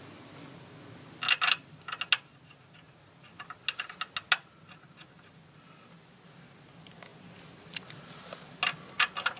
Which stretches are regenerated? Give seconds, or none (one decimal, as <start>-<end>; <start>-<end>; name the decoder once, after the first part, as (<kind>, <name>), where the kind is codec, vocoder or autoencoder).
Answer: none